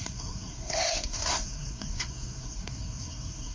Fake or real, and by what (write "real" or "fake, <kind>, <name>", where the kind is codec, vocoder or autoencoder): fake, codec, SNAC